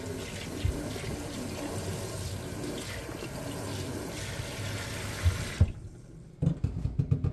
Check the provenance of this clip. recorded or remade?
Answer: recorded